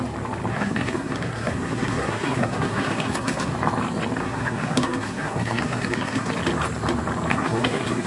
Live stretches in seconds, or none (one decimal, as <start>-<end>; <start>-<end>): 0.0-0.5; 3.5-4.2; 6.3-7.3